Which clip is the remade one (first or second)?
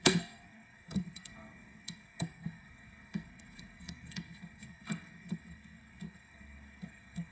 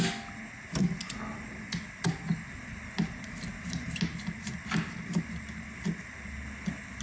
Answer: first